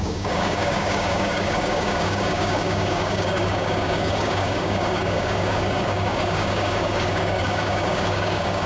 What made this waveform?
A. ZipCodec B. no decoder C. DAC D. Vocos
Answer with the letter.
C